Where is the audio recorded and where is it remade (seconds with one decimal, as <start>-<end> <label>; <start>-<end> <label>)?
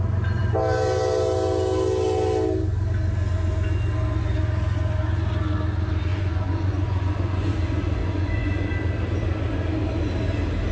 0.0-6.1 recorded; 6.1-7.5 remade; 7.5-8.0 recorded; 8.0-8.7 remade; 8.7-10.7 recorded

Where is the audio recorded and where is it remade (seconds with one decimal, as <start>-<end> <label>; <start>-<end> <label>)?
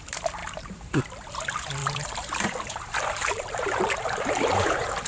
0.0-0.4 recorded; 0.4-1.0 remade; 1.0-1.8 recorded; 1.8-5.1 remade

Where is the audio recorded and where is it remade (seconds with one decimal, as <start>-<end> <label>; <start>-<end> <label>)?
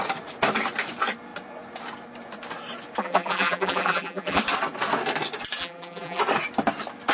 0.0-3.0 recorded; 3.0-4.4 remade; 4.4-5.6 recorded; 5.6-6.2 remade; 6.2-7.1 recorded